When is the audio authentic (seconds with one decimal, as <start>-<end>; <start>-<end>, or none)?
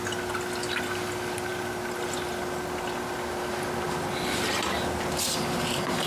0.0-6.1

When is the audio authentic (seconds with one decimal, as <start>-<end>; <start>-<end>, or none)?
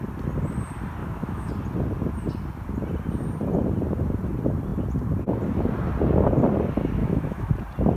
0.0-1.0; 1.5-7.0; 7.5-8.0